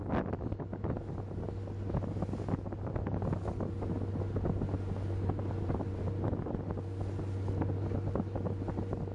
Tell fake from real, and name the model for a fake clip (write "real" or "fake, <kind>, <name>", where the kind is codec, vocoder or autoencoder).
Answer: real